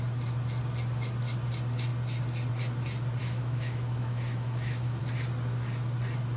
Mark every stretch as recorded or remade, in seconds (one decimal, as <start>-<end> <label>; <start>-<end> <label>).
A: 0.0-3.2 recorded; 3.2-5.0 remade; 5.0-6.4 recorded